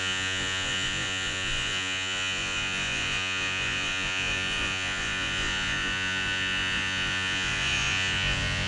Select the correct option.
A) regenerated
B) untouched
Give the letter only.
A